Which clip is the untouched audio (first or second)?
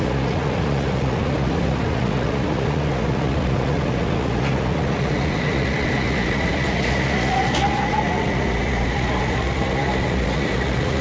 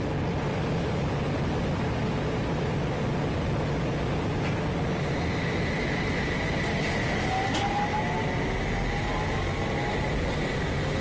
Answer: second